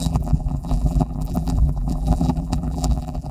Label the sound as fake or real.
fake